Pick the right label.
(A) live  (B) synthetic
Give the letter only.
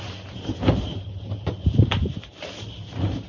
B